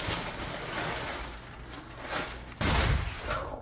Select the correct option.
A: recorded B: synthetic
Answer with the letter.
A